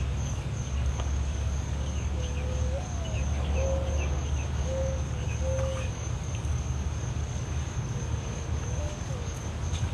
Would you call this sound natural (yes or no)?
no